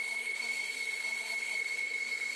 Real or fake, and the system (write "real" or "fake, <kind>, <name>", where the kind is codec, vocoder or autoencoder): fake, codec, SNAC